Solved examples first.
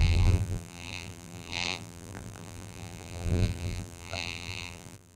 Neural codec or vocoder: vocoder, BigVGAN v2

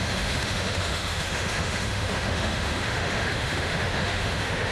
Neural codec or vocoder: autoencoder, DAC-VAE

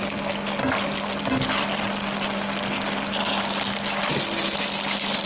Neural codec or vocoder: none